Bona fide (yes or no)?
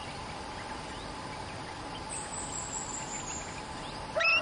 yes